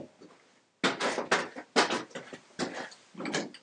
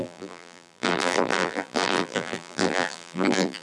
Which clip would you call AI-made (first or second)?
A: second